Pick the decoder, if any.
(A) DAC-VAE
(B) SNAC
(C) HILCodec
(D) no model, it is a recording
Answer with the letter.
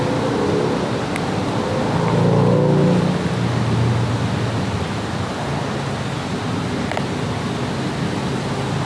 D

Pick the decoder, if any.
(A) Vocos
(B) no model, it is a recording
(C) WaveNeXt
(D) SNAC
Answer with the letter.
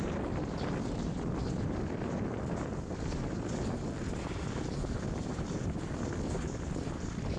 B